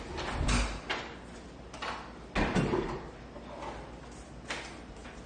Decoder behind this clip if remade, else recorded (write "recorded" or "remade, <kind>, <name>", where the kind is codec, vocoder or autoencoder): recorded